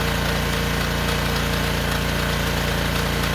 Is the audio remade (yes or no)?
no